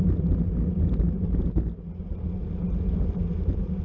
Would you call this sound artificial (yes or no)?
no